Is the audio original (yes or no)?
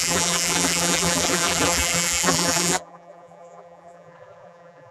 no